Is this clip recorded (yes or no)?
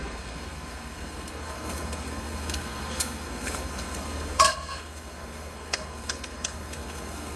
no